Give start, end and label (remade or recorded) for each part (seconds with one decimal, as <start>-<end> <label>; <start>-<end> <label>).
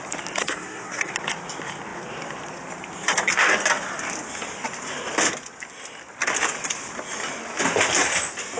0.0-0.4 recorded; 0.4-1.1 remade; 1.1-8.6 recorded